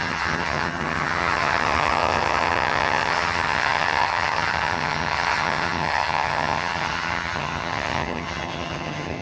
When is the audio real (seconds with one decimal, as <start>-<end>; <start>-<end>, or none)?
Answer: none